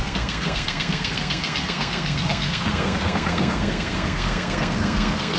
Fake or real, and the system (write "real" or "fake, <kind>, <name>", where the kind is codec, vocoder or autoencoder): fake, codec, SNAC